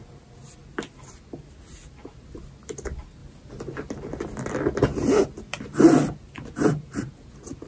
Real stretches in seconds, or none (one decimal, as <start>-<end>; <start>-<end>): 0.0-7.7